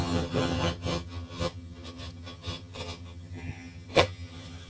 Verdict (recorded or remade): remade